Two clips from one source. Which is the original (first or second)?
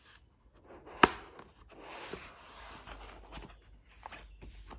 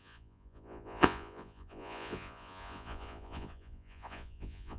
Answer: first